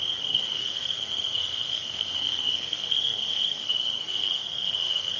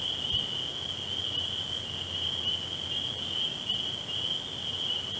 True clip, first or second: second